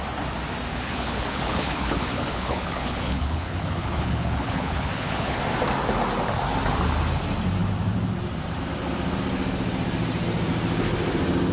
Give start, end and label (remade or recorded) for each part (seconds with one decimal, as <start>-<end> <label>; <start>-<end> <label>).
0.0-0.7 recorded; 0.7-5.4 remade; 5.4-11.5 recorded